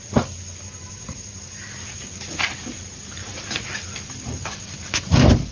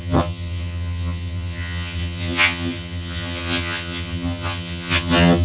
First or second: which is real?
first